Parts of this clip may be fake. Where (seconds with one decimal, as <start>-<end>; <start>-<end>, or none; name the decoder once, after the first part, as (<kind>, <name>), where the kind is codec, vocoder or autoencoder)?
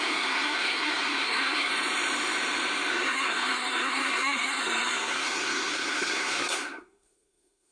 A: 0.0-1.7 (codec, SNAC); 2.9-7.7